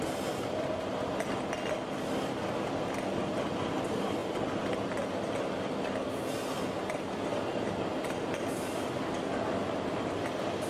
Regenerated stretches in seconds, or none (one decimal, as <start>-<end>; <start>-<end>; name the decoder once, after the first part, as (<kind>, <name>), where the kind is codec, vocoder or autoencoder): none